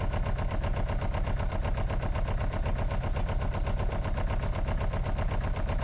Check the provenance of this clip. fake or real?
real